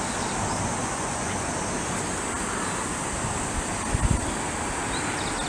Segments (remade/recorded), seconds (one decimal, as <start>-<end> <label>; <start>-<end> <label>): 0.0-0.8 recorded; 0.8-1.5 remade; 1.5-5.5 recorded